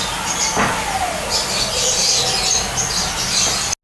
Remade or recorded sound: recorded